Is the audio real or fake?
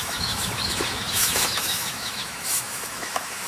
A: fake